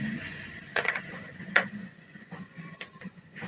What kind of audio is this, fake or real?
fake